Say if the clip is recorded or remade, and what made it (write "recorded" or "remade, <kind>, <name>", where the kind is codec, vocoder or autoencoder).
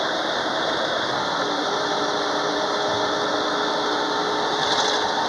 recorded